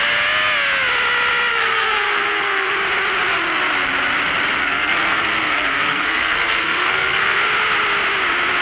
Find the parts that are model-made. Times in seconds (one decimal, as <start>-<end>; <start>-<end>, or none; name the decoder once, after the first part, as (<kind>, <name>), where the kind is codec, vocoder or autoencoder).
1.5-2.7 (codec, SNAC); 4.6-7.4